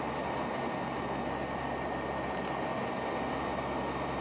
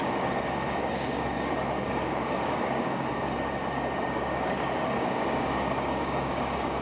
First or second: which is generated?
second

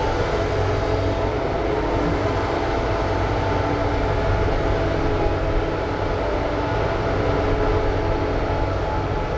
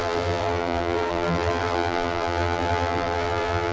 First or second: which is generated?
second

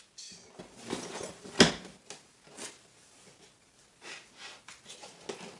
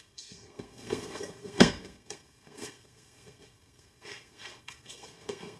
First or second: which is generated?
second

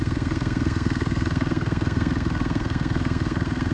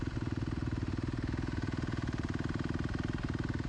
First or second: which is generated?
first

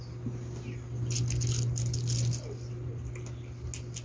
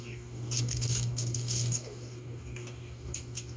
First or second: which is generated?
second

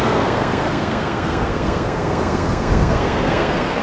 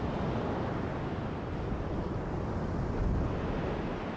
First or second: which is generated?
first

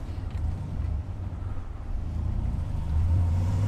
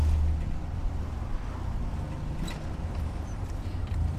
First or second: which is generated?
first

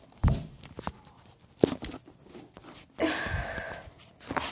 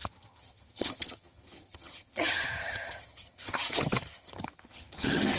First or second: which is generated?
second